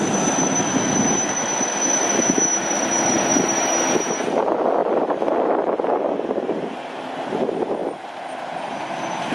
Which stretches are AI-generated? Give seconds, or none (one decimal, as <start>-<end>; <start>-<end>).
4.8-5.9